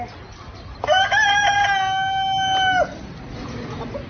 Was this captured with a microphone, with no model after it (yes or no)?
yes